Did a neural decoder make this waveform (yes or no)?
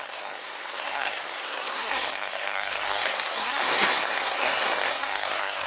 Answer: yes